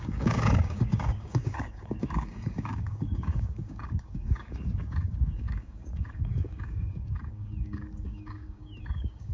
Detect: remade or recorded remade